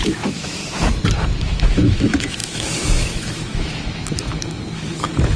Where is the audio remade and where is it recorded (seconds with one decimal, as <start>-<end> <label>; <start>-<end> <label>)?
0.0-0.6 remade; 0.6-1.4 recorded; 1.4-5.4 remade